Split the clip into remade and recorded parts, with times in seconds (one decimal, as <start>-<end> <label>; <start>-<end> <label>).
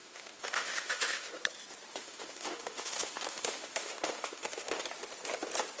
0.0-1.3 remade; 1.3-1.9 recorded; 1.9-4.8 remade; 4.8-5.8 recorded